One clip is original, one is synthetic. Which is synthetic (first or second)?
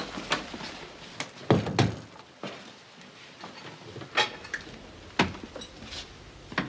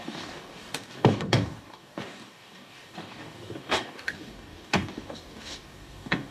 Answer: second